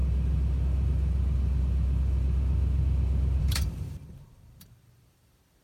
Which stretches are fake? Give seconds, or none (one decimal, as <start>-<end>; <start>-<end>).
3.4-5.6